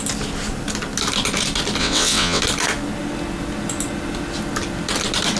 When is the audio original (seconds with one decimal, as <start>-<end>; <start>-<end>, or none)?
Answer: 0.0-1.8; 2.4-5.4